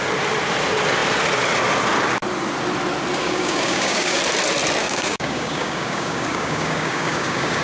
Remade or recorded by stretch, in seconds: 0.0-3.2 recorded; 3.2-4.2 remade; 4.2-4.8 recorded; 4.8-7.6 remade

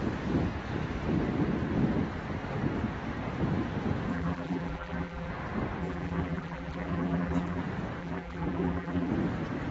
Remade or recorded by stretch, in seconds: 0.0-4.1 recorded; 4.1-5.3 remade; 5.3-5.8 recorded; 5.8-7.6 remade; 7.6-8.0 recorded; 8.0-9.1 remade; 9.1-9.7 recorded